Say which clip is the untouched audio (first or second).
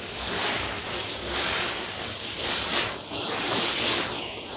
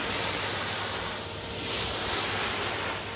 second